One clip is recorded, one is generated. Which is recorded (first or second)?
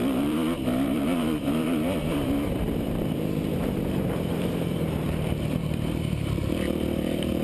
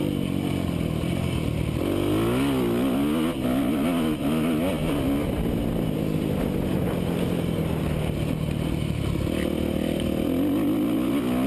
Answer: second